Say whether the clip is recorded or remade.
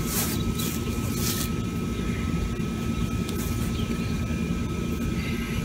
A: recorded